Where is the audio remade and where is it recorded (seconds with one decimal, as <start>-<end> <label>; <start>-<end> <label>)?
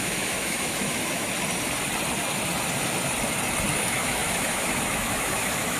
0.0-1.3 remade; 1.3-3.7 recorded; 3.7-5.8 remade